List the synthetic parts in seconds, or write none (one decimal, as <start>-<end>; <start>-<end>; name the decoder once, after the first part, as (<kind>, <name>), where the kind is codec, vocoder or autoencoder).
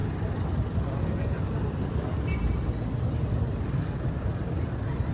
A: none